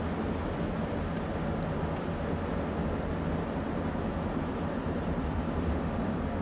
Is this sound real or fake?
real